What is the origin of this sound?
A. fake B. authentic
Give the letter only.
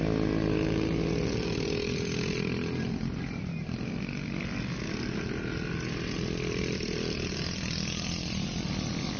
B